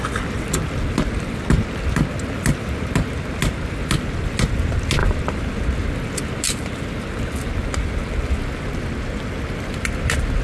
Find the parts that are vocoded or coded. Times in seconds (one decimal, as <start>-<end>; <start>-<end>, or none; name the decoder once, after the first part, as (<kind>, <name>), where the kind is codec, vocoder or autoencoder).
none